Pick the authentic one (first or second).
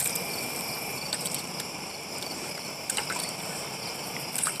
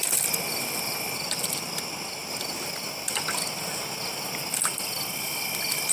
second